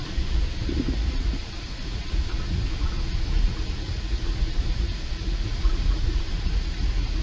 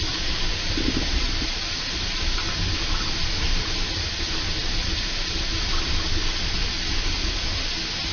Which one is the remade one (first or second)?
first